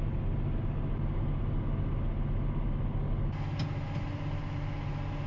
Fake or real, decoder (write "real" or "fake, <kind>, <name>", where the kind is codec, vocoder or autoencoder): real